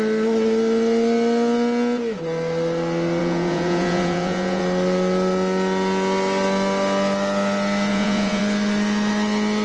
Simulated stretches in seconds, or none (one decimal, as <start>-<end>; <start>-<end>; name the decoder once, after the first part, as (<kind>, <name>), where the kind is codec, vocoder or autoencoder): 3.2-4.6 (vocoder, Vocos); 7.9-8.4